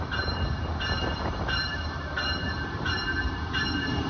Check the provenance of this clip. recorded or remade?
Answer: remade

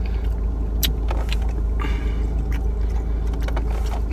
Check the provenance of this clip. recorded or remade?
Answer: recorded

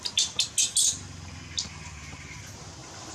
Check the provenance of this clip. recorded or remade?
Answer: recorded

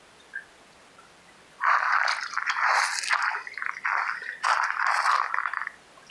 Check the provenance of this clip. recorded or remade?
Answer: recorded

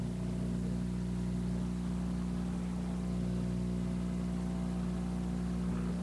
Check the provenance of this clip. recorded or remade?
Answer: recorded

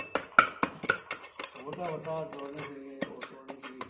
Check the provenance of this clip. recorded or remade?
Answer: recorded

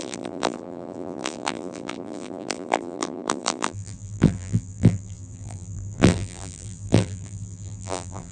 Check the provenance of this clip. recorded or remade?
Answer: remade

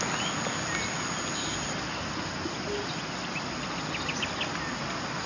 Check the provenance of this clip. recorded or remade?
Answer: recorded